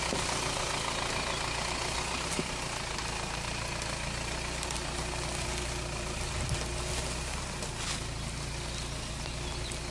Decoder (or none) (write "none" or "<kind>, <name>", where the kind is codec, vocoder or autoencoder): none